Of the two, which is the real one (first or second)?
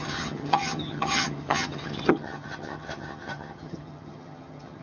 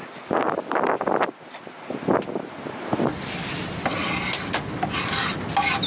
second